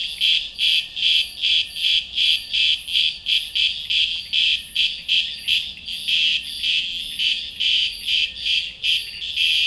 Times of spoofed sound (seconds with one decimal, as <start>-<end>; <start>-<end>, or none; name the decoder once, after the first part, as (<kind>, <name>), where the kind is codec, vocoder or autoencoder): none